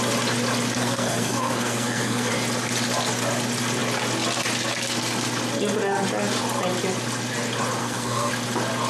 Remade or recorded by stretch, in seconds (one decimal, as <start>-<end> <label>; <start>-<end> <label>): 0.0-0.8 recorded; 0.8-2.3 remade; 2.3-7.8 recorded; 7.8-8.3 remade; 8.3-8.9 recorded